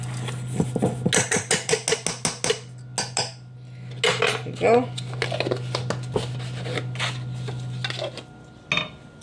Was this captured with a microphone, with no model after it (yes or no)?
yes